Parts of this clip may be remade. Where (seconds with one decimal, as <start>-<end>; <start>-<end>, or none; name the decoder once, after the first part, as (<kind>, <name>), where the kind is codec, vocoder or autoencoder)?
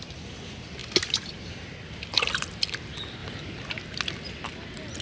none